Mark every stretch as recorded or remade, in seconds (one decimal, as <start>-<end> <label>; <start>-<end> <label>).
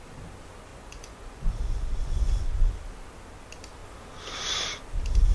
0.0-0.7 recorded; 0.7-2.7 remade; 2.7-5.3 recorded